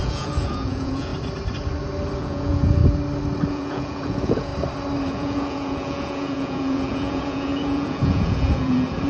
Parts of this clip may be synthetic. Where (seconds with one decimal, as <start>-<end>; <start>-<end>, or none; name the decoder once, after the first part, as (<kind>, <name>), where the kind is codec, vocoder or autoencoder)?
0.0-1.1 (vocoder, Vocos); 2.2-2.8; 3.5-4.5; 5.1-9.1